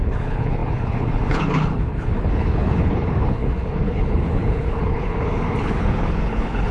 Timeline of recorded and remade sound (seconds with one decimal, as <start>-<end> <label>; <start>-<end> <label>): 0.0-6.7 remade